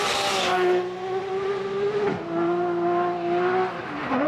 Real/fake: real